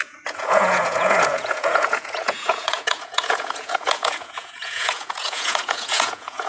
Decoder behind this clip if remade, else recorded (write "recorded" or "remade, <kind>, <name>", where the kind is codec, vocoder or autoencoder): remade, vocoder, Vocos